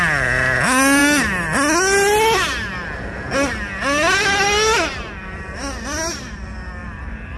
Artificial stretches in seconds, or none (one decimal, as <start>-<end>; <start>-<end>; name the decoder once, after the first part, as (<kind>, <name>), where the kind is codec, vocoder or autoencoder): 6.8-7.4 (vocoder, BigVGAN v2)